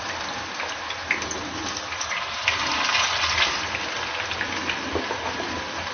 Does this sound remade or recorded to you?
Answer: recorded